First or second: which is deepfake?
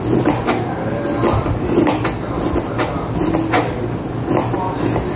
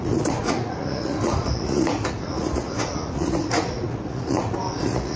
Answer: second